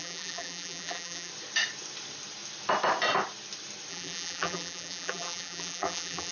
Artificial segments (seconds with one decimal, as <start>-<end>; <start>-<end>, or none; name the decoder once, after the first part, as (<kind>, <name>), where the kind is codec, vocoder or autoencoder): 0.0-1.3 (vocoder, BigVGAN v2); 3.9-6.3